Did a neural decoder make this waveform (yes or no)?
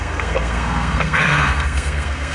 yes